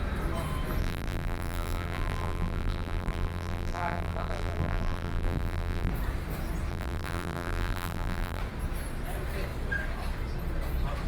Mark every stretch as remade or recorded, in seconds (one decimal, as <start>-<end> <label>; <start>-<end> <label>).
0.0-0.8 recorded; 0.8-5.9 remade; 5.9-6.7 recorded; 6.7-8.4 remade; 8.4-11.1 recorded